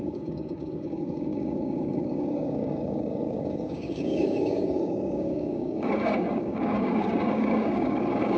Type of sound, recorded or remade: remade